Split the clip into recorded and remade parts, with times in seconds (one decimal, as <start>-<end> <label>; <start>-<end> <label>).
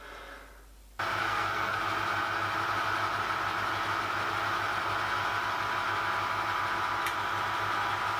0.0-1.2 recorded; 1.2-1.8 remade; 1.8-8.2 recorded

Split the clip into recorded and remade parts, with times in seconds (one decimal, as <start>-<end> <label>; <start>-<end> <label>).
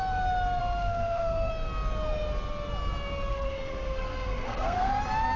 0.0-0.6 recorded; 0.6-1.5 remade; 1.5-3.3 recorded; 3.3-4.9 remade; 4.9-5.4 recorded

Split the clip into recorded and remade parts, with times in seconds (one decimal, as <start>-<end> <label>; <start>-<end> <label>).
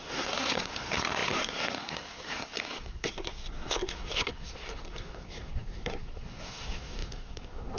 0.0-7.8 remade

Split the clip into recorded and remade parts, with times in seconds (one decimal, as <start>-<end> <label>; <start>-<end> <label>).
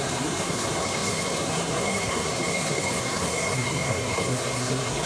0.0-5.1 remade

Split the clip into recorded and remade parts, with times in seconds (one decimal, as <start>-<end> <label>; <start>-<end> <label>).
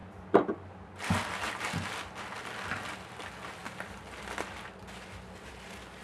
0.0-6.0 recorded